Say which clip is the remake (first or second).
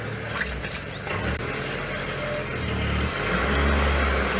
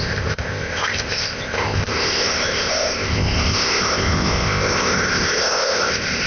second